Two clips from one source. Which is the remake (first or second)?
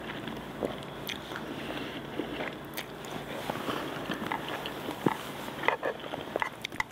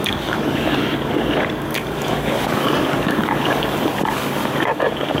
second